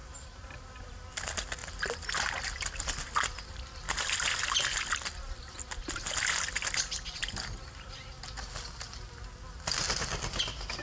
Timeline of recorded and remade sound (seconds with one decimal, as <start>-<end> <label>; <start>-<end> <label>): 0.0-10.8 recorded